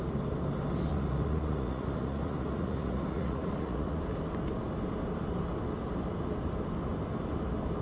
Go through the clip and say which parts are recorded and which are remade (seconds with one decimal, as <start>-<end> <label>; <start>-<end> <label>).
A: 0.0-0.9 recorded; 0.9-4.0 remade; 4.0-7.8 recorded